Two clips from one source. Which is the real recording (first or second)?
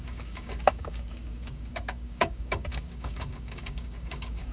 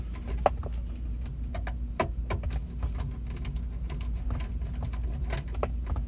second